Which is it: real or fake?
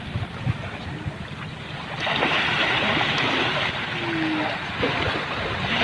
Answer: real